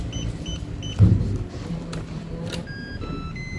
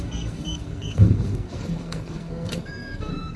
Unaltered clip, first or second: first